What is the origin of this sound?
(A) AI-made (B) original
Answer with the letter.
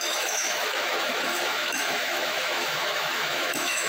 A